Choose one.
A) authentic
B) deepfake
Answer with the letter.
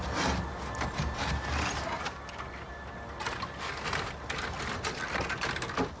A